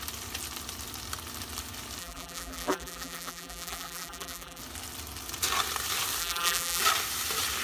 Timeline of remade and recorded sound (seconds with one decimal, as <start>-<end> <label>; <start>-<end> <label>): 0.0-2.0 recorded; 2.0-4.6 remade; 4.6-6.2 recorded; 6.2-6.8 remade; 6.8-7.6 recorded